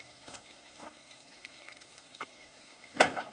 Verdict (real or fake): fake